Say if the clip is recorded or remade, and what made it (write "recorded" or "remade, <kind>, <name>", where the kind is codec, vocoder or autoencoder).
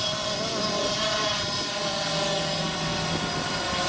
recorded